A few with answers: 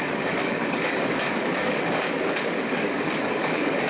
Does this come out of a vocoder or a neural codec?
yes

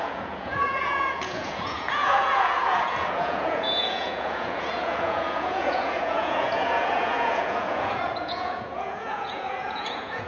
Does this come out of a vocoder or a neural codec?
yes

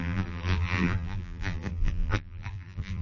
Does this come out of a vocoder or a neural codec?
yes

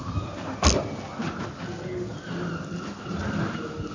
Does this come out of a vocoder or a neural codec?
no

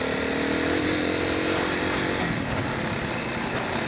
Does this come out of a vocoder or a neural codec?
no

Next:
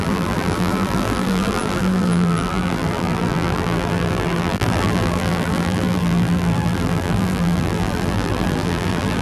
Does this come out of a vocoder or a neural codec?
yes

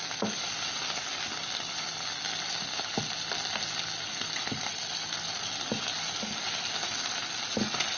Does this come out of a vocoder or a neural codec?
no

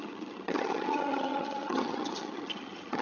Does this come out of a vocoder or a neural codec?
yes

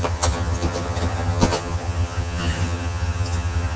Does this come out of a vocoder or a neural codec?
yes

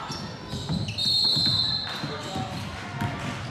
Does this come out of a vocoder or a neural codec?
no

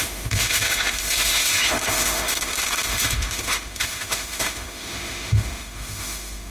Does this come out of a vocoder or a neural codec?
yes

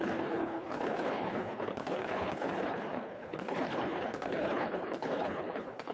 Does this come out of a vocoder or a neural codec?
yes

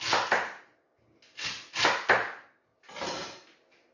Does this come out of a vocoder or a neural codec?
no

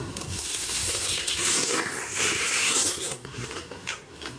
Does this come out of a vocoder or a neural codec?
yes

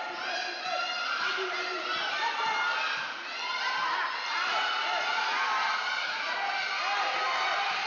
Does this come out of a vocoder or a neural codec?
no